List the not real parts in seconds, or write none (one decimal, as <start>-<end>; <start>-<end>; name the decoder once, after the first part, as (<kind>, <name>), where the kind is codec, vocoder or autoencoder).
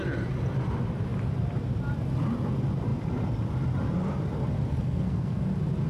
4.7-5.4 (codec, SNAC)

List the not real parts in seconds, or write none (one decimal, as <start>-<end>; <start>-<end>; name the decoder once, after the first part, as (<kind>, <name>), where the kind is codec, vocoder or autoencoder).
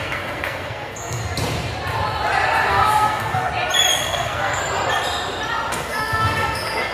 0.0-1.2 (codec, SNAC); 2.7-3.5; 4.0-4.6; 5.7-6.9